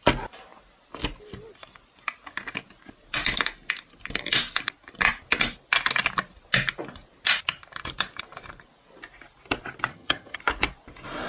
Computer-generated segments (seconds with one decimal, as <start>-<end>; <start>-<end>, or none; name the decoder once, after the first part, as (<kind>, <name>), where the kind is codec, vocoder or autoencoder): 9.9-10.4 (vocoder, HiFi-GAN)